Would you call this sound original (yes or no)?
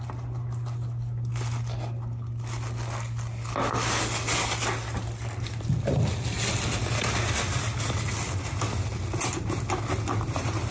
yes